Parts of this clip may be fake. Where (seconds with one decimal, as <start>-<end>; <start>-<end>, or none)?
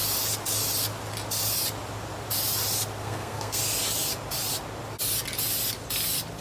3.0-3.6